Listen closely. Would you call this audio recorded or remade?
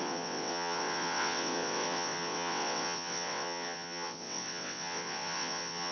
remade